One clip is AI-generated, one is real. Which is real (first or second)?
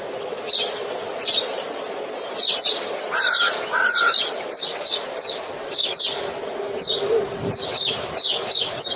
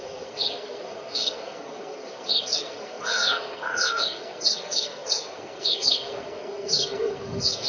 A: first